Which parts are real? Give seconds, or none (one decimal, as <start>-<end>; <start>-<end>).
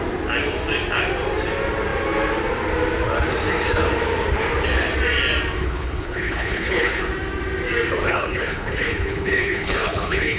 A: 0.0-5.6; 7.0-8.0